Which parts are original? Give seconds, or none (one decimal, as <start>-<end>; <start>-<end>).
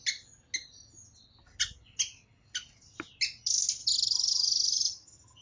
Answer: 0.0-3.8